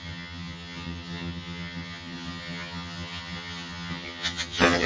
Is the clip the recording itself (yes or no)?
no